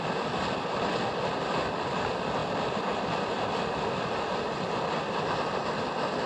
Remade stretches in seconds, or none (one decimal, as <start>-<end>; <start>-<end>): none